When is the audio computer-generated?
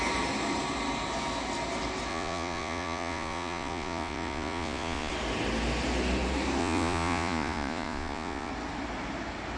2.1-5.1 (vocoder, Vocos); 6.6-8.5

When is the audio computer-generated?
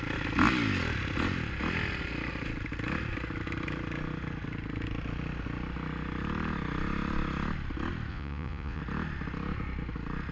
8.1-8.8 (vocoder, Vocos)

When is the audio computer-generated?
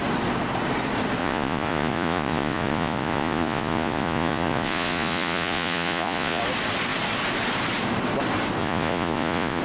1.2-6.4 (vocoder, Vocos); 8.6-9.6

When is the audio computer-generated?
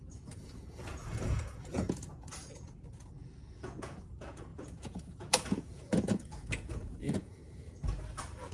0.0-7.4 (vocoder, Vocos)